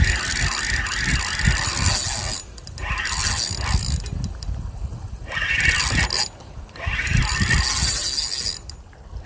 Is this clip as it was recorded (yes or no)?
yes